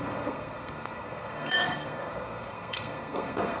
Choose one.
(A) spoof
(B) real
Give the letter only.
A